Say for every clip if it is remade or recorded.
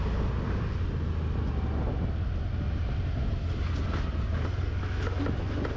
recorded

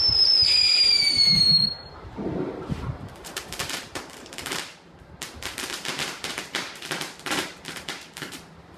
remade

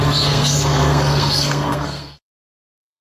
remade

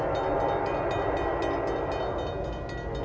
recorded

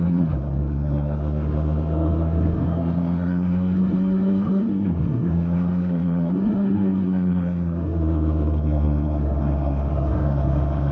remade